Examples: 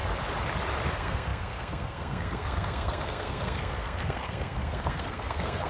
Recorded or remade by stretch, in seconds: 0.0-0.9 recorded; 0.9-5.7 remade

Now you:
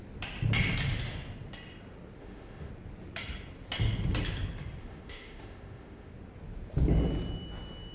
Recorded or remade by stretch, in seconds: 0.0-2.2 recorded; 2.2-2.7 remade; 2.7-4.8 recorded; 4.8-6.1 remade; 6.1-7.9 recorded

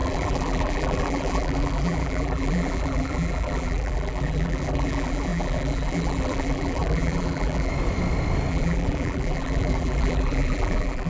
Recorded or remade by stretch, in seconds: 0.0-7.7 remade; 7.7-8.5 recorded; 8.5-11.1 remade

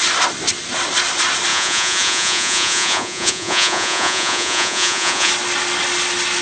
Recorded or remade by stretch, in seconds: 0.0-1.5 recorded; 1.5-5.3 remade; 5.3-6.4 recorded

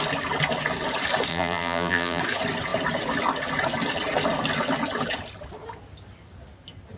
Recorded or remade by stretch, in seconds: 0.0-1.3 recorded; 1.3-2.2 remade; 2.2-7.0 recorded